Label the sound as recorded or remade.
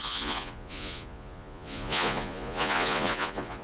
remade